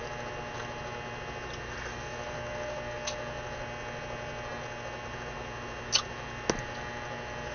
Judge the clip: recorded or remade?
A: recorded